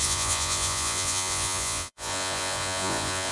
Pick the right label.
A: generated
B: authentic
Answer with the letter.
A